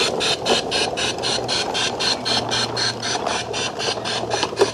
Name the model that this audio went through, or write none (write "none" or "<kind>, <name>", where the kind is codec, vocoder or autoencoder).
none